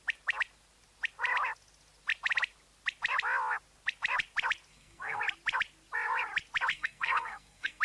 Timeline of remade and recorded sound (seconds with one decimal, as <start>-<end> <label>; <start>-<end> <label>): 0.0-4.7 recorded; 4.7-5.2 remade; 5.2-6.7 recorded; 6.7-7.8 remade

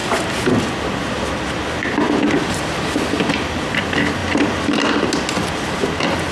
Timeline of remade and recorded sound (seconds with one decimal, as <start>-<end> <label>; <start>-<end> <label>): 0.0-6.3 recorded

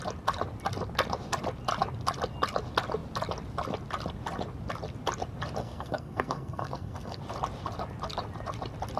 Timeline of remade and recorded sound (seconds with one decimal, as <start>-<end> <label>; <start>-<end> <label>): 0.0-5.6 recorded; 5.6-7.2 remade; 7.2-9.0 recorded

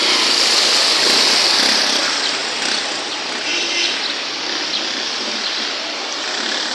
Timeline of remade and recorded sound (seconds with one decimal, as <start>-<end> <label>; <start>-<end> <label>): 0.0-6.7 recorded

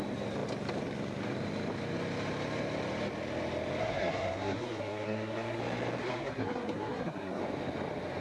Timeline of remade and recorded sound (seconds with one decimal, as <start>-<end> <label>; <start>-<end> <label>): 0.0-3.8 recorded; 3.8-5.6 remade; 5.6-6.0 recorded; 6.0-7.4 remade; 7.4-8.2 recorded

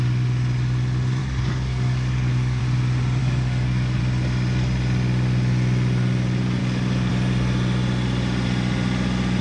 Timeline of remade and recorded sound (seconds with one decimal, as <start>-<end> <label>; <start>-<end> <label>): 0.0-1.2 recorded; 1.2-2.6 remade; 2.6-3.2 recorded; 3.2-4.0 remade; 4.0-6.6 recorded; 6.6-7.1 remade; 7.1-9.4 recorded

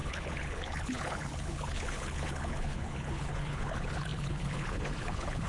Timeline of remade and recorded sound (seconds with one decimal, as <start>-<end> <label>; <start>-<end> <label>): 0.0-5.5 remade

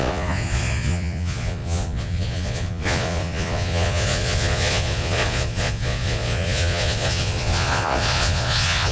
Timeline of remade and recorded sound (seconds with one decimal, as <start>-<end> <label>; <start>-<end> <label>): 0.0-8.9 remade